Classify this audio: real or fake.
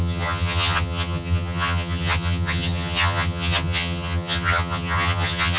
fake